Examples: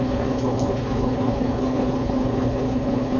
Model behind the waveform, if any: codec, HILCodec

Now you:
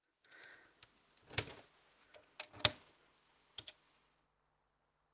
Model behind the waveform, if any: none